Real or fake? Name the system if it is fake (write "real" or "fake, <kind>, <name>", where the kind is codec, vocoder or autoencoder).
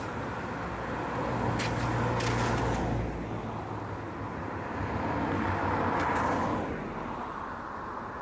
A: real